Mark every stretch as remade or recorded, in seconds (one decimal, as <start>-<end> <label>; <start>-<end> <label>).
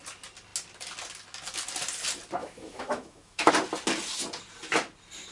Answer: 0.0-2.4 recorded; 2.4-3.5 remade; 3.5-5.3 recorded